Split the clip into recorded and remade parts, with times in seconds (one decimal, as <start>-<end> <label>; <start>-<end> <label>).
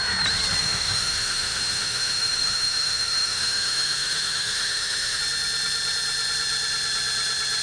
0.0-0.6 recorded; 0.6-5.2 remade; 5.2-7.6 recorded